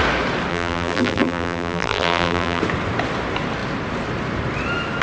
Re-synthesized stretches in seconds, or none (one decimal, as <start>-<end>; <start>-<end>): 0.5-2.6